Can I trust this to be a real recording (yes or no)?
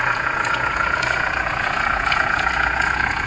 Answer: no